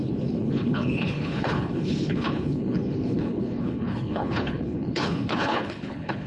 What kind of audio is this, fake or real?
fake